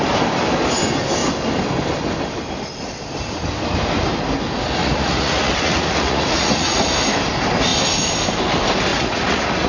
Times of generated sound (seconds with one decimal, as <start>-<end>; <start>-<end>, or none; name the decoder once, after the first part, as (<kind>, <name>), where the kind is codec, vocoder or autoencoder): 4.8-6.9 (vocoder, Vocos); 8.9-9.7